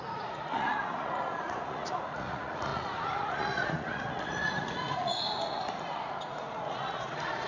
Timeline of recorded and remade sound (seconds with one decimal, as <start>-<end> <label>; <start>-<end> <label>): 0.0-7.5 remade